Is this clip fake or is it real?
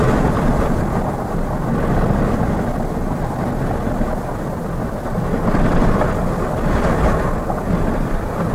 real